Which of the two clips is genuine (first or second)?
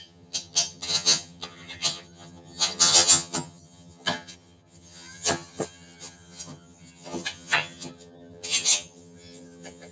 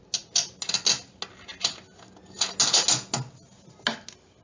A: second